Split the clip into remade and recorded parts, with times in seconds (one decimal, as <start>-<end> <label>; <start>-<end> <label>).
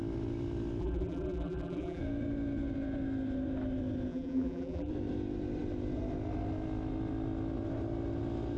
0.0-0.8 recorded; 0.8-2.0 remade; 2.0-4.1 recorded; 4.1-4.9 remade; 4.9-8.6 recorded